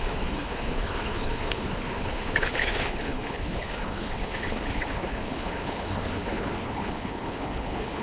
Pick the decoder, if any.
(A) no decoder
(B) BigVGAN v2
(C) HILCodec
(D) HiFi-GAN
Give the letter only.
C